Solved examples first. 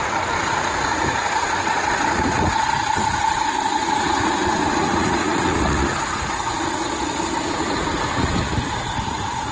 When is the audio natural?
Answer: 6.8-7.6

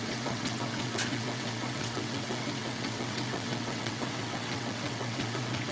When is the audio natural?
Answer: none

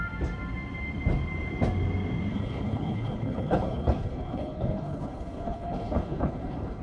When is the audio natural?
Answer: 0.0-2.3

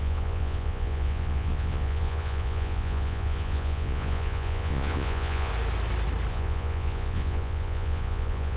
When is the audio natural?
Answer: 5.5-6.3

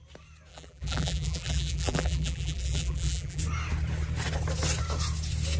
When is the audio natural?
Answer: 0.0-0.5; 3.4-5.6

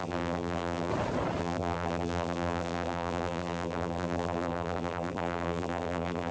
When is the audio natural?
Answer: 0.9-1.4